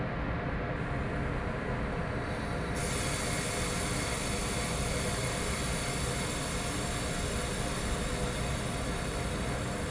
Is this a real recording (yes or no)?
yes